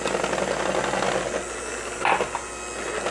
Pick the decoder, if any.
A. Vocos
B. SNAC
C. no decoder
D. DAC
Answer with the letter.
C